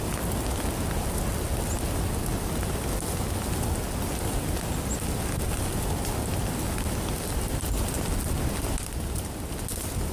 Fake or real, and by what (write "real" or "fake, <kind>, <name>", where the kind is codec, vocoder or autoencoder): real